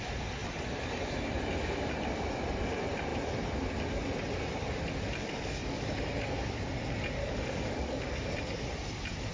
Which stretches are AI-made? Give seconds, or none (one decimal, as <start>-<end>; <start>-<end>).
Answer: 5.2-6.0; 7.2-8.3